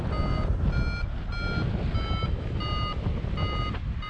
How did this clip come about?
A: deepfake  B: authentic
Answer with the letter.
B